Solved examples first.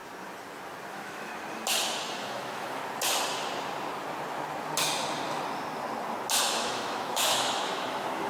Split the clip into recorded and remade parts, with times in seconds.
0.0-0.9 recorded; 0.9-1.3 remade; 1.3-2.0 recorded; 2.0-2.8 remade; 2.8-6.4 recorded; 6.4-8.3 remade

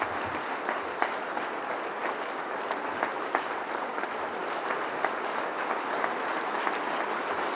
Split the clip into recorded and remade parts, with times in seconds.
0.0-7.5 recorded

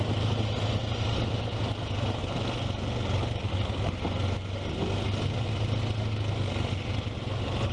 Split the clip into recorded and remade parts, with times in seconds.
0.0-7.7 recorded

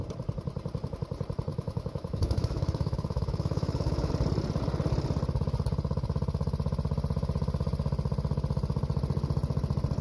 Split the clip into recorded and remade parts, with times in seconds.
0.0-1.5 recorded; 1.5-4.1 remade; 4.1-10.0 recorded

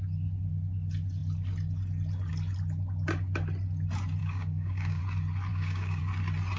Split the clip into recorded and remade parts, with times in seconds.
0.0-4.2 recorded; 4.2-5.0 remade; 5.0-5.5 recorded; 5.5-6.0 remade; 6.0-6.6 recorded

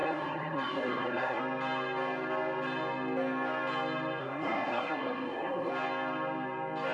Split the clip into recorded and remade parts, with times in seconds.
0.0-1.4 remade; 1.4-4.2 recorded; 4.2-5.7 remade; 5.7-6.9 recorded